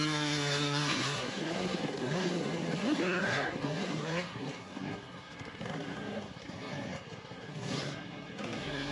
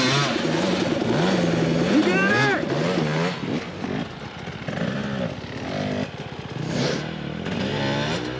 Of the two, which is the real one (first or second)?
second